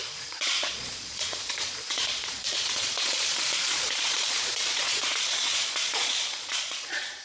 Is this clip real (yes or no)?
no